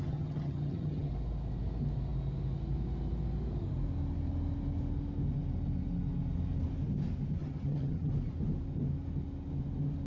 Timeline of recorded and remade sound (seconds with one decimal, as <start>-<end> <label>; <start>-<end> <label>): 0.0-1.1 remade; 1.1-7.4 recorded; 7.4-8.1 remade; 8.1-10.1 recorded